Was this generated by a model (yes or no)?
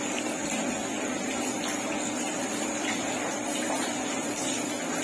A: no